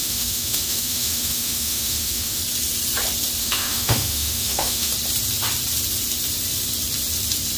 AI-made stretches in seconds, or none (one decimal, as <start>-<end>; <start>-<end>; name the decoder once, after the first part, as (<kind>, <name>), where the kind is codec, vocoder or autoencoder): 0.0-2.4 (autoencoder, DAC-VAE); 3.4-4.9